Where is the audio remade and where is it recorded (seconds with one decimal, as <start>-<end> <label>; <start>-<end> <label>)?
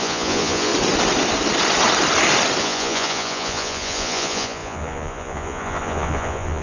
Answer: 0.0-0.7 remade; 0.7-2.6 recorded; 2.6-6.6 remade